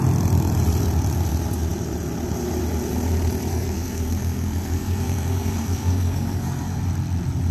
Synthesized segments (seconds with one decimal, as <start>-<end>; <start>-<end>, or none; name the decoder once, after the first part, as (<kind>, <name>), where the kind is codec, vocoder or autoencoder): 3.5-6.8 (codec, SNAC)